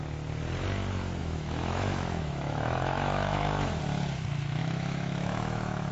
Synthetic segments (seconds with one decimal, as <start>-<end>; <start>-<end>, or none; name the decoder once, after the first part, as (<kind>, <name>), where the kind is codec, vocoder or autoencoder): 1.2-3.8 (autoencoder, DAC-VAE); 4.6-5.9